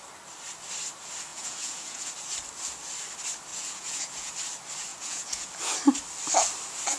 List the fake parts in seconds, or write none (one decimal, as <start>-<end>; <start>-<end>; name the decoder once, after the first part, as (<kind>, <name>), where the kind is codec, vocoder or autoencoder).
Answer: 1.3-2.1 (vocoder, Vocos); 3.5-4.3; 4.9-5.5